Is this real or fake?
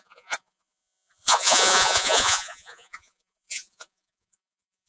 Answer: fake